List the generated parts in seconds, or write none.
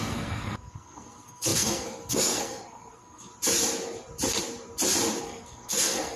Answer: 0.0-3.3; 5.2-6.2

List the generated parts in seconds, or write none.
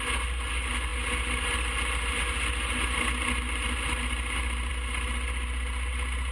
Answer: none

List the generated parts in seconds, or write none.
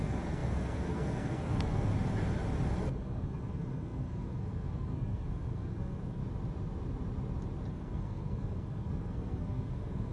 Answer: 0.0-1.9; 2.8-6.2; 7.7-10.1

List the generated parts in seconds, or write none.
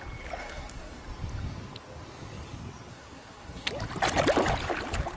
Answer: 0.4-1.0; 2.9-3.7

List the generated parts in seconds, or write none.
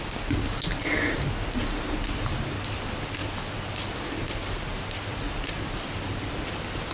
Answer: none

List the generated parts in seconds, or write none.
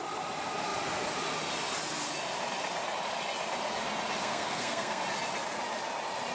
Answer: 4.2-5.0